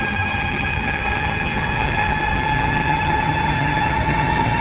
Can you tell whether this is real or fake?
fake